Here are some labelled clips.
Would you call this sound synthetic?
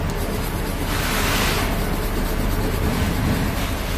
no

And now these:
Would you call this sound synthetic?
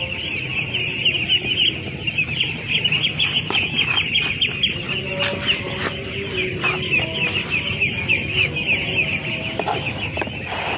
no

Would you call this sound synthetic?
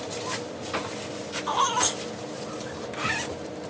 no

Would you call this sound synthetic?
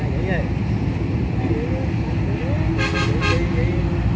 no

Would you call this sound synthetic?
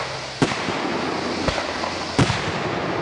no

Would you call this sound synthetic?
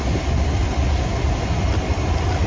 no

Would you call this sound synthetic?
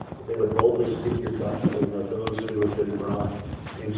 no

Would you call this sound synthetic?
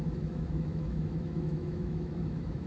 yes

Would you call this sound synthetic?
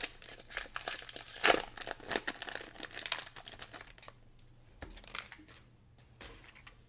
no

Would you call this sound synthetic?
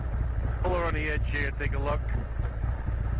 no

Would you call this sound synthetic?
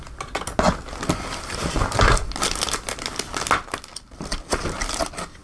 no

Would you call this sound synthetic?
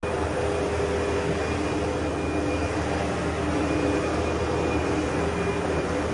no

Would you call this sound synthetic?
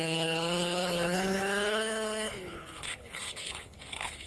yes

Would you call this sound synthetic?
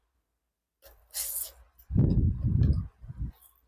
no